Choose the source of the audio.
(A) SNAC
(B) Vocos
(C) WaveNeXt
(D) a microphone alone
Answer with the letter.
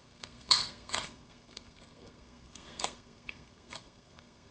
A